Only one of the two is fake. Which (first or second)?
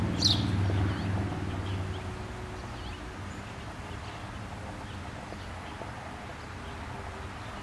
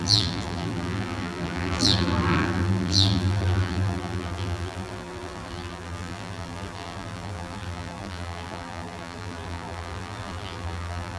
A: second